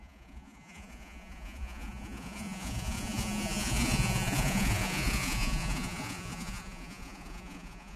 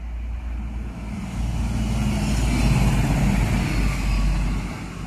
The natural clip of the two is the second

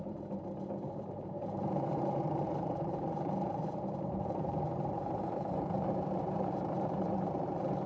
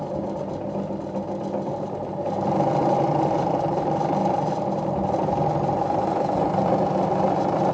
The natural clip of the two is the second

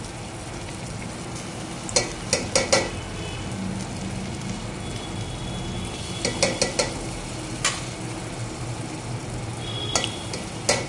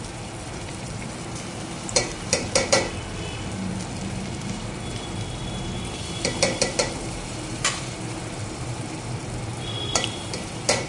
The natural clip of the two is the first